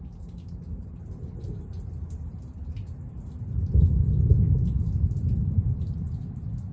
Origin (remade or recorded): recorded